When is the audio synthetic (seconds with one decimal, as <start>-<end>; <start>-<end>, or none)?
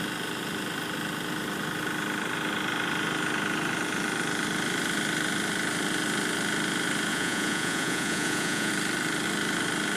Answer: 7.1-8.7